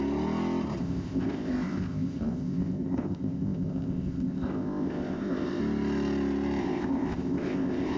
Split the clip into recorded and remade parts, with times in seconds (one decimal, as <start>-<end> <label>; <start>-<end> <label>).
0.0-0.8 recorded; 0.8-5.6 remade; 5.6-6.6 recorded; 6.6-8.0 remade